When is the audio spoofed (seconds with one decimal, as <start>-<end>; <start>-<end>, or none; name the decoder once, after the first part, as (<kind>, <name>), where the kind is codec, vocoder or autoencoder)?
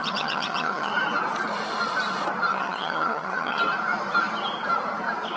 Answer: 0.0-0.9 (vocoder, HiFi-GAN); 2.5-3.6